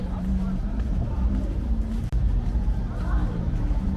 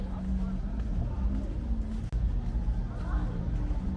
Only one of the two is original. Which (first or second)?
second